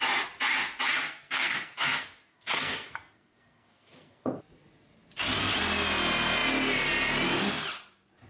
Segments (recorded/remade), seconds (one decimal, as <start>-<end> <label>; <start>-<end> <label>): 0.0-1.0 recorded; 1.0-4.4 remade; 4.4-8.3 recorded